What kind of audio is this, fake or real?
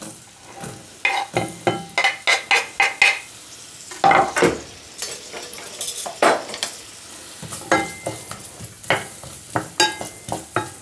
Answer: real